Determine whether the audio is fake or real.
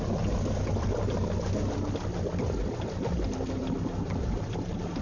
fake